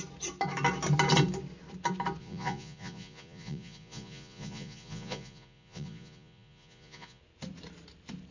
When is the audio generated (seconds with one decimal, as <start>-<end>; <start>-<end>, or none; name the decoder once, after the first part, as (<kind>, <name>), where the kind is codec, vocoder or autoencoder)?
2.2-7.2 (vocoder, Vocos)